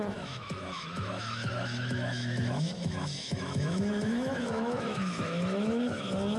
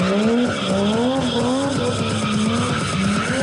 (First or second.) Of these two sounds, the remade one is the first